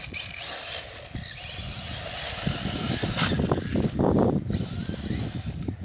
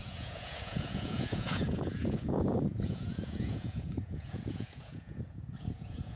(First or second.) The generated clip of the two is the second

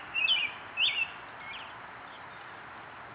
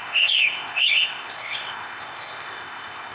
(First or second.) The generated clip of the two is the second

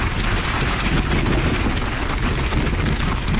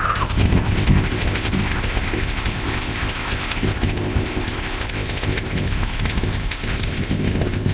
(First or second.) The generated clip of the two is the second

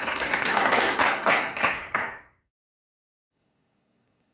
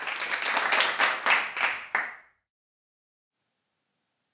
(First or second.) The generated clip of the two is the first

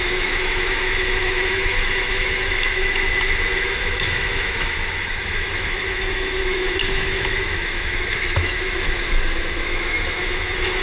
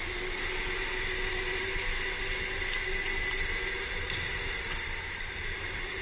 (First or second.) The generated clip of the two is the first